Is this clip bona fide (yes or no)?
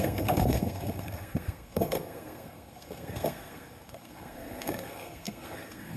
no